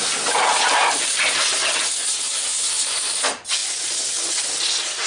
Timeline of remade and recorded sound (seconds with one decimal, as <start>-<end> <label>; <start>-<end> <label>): 0.0-5.1 recorded